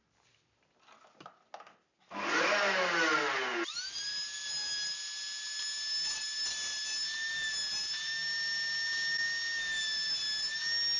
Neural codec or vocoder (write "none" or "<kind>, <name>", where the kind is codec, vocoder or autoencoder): none